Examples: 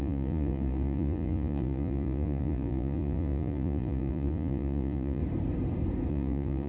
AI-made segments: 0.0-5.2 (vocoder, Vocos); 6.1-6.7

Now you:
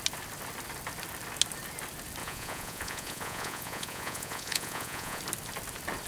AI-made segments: 2.2-5.2 (vocoder, Vocos)

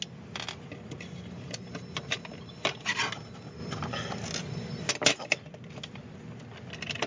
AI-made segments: none

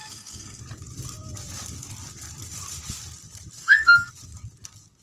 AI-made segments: 0.0-0.6 (codec, SNAC); 3.6-4.1

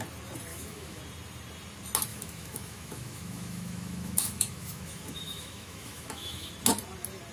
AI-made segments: 0.5-1.0 (autoencoder, DAC-VAE); 2.1-6.5

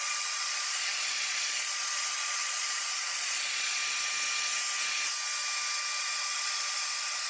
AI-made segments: 0.0-3.8 (vocoder, Vocos); 6.0-7.3

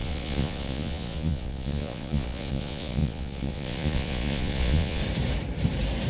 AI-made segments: 0.0-5.0 (vocoder, Vocos)

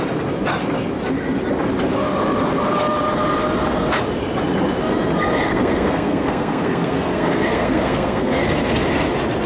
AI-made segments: 5.5-8.4 (codec, SNAC)